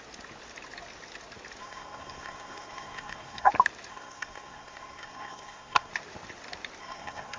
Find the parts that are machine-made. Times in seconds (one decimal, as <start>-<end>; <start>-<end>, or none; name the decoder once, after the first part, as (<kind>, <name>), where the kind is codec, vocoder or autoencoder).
1.6-3.5 (codec, SNAC); 3.9-5.9; 6.8-7.4